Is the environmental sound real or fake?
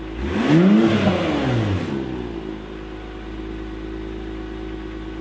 real